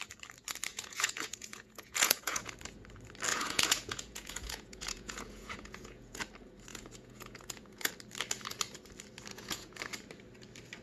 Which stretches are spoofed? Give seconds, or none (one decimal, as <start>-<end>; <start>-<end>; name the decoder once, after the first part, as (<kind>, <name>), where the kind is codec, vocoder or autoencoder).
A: 0.7-2.5 (vocoder, Vocos); 3.3-6.2; 6.7-7.9; 9.3-9.8